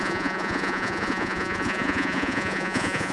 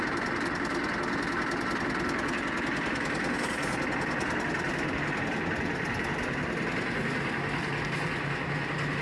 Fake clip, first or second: first